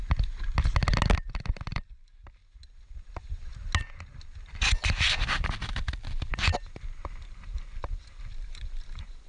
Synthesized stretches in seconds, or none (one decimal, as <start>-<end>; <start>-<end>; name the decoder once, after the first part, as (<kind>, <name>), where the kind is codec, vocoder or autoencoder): 1.7-2.4 (vocoder, BigVGAN v2); 4.6-6.3; 7.3-9.3